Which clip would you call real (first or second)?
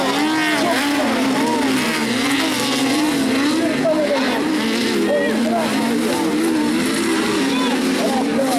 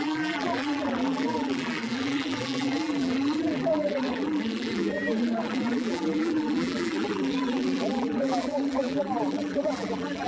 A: first